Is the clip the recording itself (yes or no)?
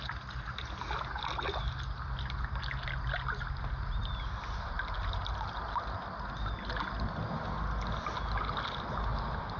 yes